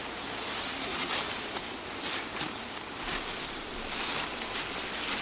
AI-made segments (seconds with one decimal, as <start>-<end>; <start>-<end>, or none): 0.9-4.0